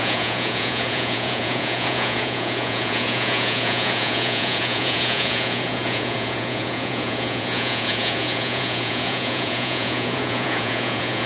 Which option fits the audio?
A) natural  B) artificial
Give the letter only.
B